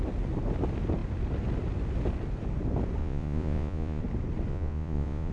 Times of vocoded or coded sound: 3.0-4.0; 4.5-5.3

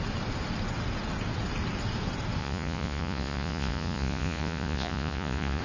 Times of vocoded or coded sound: 2.4-5.6

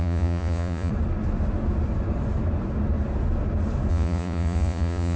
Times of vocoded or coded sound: 0.0-0.9; 3.9-5.2